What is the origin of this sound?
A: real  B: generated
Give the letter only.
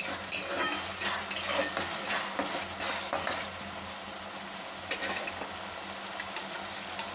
A